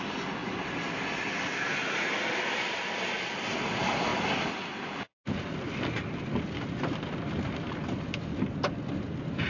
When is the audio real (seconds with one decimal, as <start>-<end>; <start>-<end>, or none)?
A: 0.0-9.5